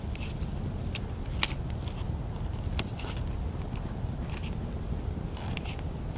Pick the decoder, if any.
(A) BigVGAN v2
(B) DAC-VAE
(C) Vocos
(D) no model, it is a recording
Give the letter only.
D